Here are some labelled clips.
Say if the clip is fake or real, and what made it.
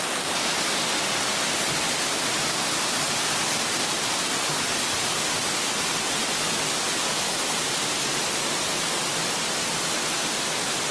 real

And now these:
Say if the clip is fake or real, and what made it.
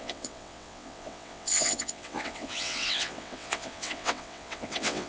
fake, vocoder, WaveNeXt